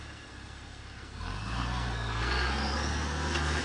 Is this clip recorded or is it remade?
remade